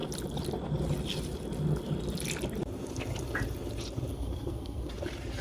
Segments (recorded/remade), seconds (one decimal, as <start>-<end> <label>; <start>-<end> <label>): 0.0-4.1 recorded; 4.1-4.9 remade; 4.9-5.4 recorded